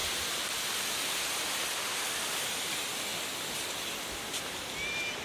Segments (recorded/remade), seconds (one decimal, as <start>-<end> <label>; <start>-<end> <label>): 0.0-5.2 recorded